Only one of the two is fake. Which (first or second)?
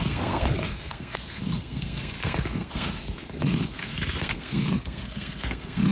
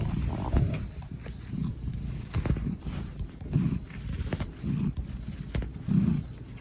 first